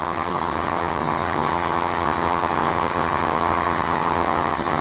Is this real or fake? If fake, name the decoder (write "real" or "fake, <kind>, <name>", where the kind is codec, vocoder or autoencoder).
fake, vocoder, HiFi-GAN